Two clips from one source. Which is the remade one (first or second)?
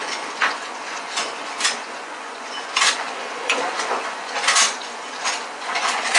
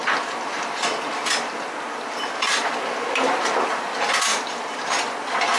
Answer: first